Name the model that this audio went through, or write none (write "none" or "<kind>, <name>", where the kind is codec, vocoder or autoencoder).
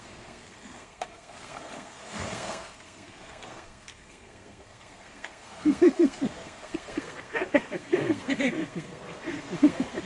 codec, SNAC